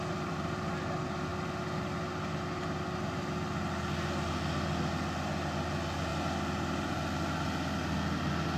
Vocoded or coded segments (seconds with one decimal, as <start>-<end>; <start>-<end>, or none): none